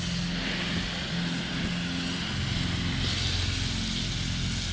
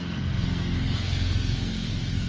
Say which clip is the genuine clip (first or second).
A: first